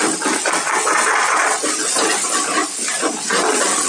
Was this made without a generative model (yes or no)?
yes